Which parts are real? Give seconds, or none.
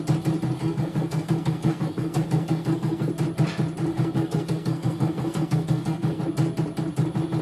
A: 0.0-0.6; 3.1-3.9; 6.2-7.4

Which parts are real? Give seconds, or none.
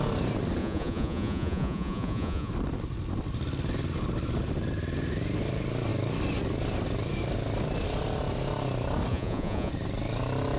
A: 0.0-0.6; 2.5-9.1; 9.7-10.6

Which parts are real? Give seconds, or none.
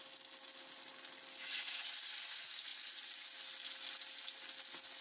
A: 0.0-5.0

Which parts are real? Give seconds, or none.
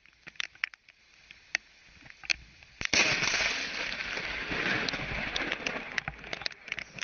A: 0.0-7.0